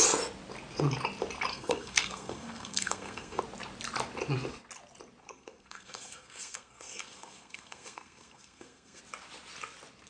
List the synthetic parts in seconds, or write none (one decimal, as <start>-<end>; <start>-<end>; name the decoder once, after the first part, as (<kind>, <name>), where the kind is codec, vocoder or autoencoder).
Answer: 1.5-3.4 (codec, SNAC); 5.2-9.0